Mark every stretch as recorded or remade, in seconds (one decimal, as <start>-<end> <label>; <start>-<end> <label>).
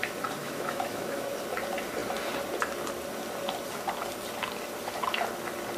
0.0-0.4 recorded; 0.4-1.3 remade; 1.3-5.8 recorded